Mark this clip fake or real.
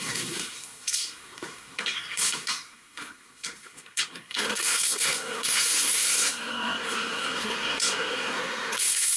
fake